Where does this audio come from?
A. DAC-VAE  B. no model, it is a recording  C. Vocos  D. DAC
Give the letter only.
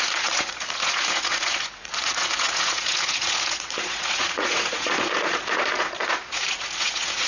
C